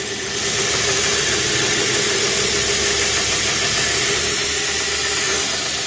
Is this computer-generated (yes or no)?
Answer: no